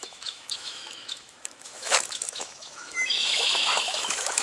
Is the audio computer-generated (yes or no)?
yes